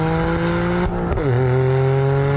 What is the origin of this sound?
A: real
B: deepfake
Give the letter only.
A